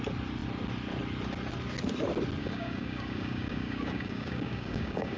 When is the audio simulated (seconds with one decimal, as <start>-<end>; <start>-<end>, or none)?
2.4-5.2